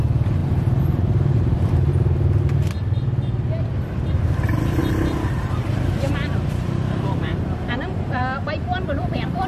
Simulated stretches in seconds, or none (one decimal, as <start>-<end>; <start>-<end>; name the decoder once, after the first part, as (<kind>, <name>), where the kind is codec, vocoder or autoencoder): 0.4-1.9 (vocoder, BigVGAN v2); 4.8-9.5